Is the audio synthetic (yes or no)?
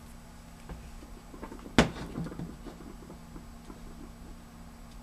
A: no